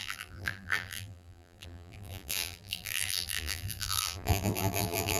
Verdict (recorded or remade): remade